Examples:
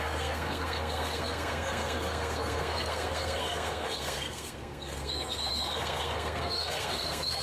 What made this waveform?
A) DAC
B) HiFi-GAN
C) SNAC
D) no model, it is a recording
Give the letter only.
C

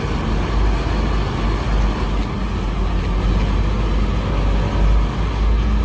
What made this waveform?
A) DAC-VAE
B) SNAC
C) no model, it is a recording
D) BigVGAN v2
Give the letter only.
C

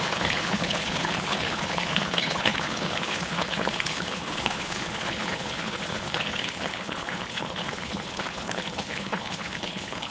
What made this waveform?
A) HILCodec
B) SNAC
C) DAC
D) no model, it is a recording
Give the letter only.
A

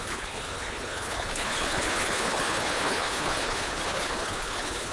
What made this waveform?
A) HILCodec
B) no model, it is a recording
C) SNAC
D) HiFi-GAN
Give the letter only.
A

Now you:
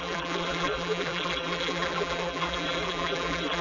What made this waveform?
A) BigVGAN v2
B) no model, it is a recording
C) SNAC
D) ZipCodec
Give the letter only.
A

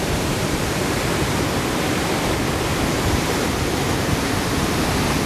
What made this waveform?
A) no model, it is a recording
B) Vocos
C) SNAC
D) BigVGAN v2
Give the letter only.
D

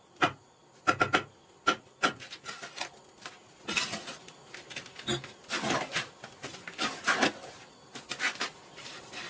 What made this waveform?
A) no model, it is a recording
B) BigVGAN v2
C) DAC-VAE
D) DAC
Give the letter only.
A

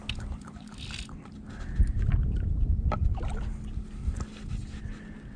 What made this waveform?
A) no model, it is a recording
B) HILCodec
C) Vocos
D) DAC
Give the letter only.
A